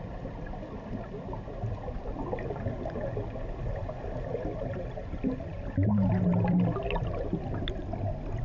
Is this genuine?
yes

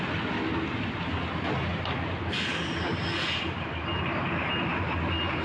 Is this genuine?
yes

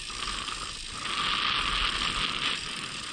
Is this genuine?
yes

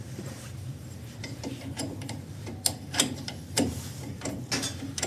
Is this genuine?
no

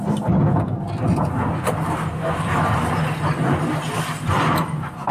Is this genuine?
yes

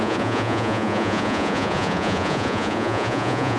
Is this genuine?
no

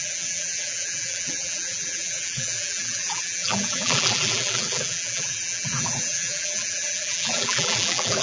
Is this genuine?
no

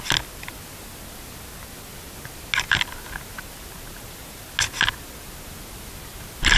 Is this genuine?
yes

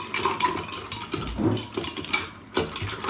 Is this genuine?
yes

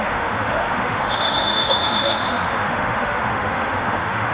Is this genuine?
no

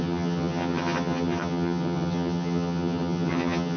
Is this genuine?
no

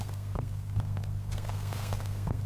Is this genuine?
no